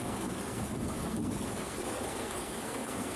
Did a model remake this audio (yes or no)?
yes